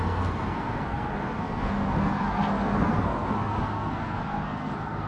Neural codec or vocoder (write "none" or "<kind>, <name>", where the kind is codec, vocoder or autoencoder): codec, SNAC